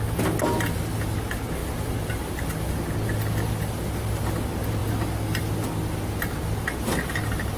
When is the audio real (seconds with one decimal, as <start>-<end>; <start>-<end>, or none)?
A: 0.0-1.6; 2.2-4.8; 5.4-7.6